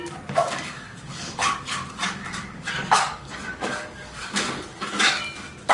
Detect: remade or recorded remade